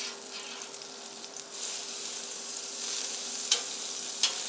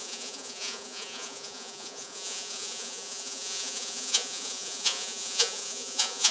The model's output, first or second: second